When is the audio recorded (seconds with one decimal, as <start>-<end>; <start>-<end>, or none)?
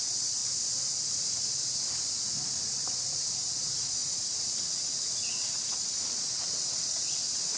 0.4-3.3